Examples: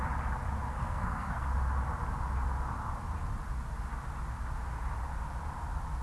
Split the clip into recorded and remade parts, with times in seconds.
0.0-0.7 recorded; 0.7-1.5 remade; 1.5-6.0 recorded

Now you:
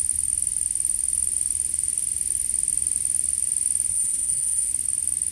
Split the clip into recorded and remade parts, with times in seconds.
0.0-3.9 recorded; 3.9-4.7 remade; 4.7-5.3 recorded

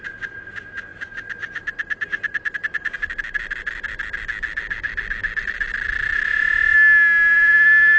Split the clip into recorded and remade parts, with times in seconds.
0.0-8.0 recorded